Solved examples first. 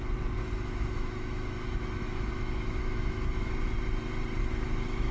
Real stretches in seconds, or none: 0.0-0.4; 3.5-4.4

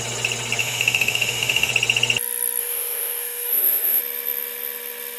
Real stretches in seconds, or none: 0.0-0.6; 1.7-2.6; 4.0-5.2

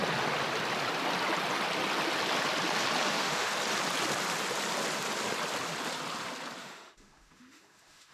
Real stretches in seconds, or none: 0.0-3.1; 3.5-6.6

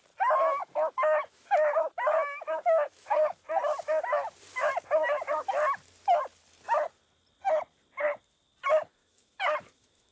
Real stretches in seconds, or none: 0.0-0.6; 3.4-8.9

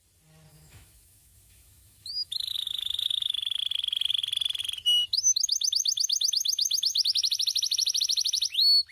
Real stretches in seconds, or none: 0.0-0.5; 3.6-8.9

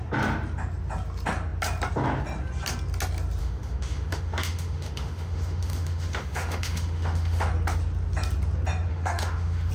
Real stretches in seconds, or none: 0.0-3.4; 7.5-8.9